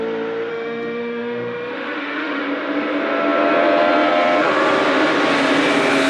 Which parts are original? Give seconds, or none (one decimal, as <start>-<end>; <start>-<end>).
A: 0.0-0.5; 2.4-6.1